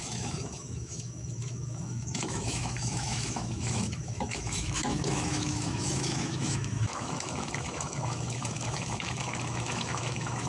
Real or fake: fake